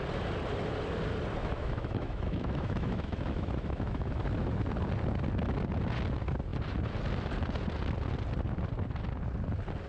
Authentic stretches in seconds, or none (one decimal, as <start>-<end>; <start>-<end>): 0.0-1.4; 4.6-9.9